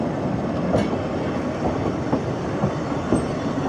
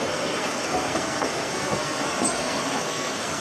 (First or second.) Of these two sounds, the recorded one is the first